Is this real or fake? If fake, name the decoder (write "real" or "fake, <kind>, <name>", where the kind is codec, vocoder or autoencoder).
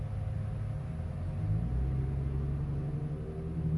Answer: real